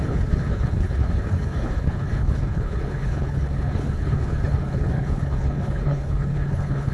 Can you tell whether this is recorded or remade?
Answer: remade